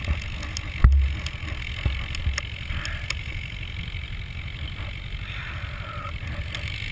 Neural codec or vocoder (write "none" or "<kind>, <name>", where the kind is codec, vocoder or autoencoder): none